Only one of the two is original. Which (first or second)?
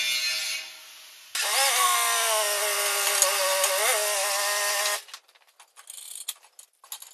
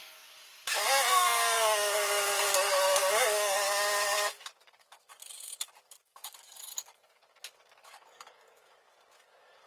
first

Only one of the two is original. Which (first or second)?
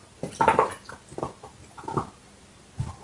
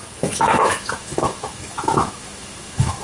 first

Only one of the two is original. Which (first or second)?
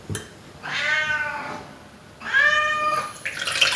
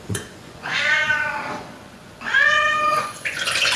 first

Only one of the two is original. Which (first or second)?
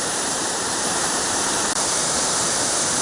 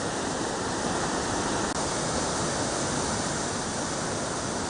second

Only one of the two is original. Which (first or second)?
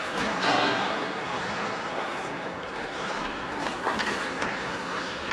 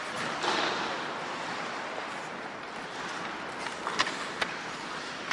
second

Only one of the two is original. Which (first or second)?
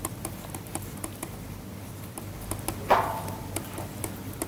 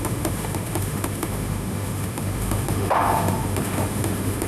first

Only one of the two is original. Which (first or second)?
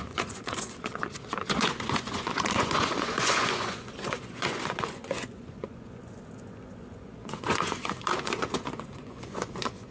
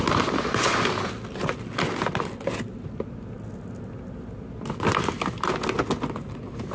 second